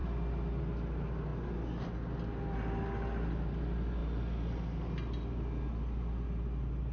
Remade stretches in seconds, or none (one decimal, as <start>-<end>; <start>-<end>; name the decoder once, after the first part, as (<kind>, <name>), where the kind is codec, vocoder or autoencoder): none